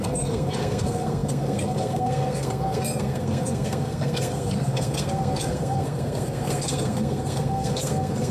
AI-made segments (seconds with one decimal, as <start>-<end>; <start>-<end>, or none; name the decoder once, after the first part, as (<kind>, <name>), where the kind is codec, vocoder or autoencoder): 0.0-8.3 (codec, SNAC)